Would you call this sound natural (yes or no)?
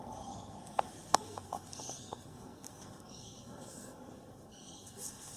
no